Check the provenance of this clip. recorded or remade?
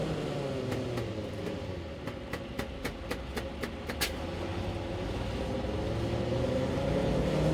recorded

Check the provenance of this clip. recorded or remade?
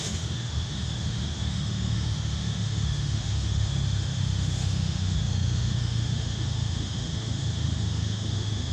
remade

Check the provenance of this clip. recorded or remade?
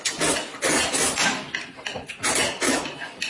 recorded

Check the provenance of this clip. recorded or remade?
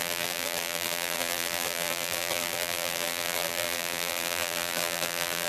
remade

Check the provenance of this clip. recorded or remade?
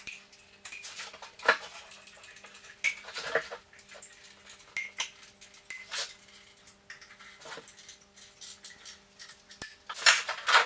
recorded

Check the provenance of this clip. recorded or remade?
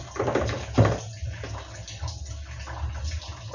recorded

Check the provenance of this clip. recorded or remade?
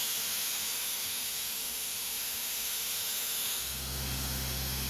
remade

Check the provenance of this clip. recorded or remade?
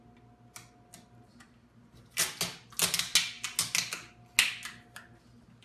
recorded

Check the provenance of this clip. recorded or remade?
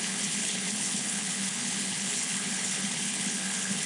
remade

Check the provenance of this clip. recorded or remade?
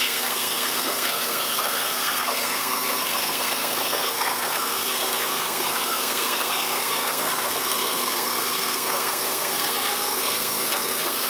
remade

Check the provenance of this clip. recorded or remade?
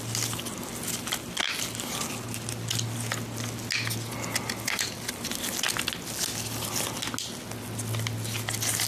recorded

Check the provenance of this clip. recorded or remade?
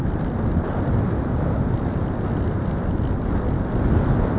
recorded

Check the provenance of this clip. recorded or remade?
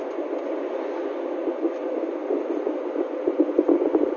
recorded